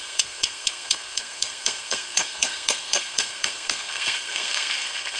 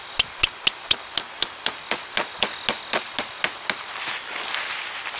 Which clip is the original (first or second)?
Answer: second